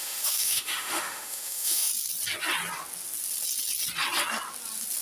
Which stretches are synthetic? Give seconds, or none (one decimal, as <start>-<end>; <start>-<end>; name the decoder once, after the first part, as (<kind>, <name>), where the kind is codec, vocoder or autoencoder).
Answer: 0.0-1.9 (autoencoder, DAC-VAE)